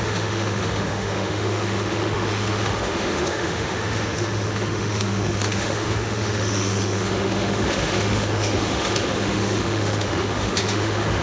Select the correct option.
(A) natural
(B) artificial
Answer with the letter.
B